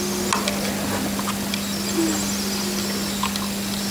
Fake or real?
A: real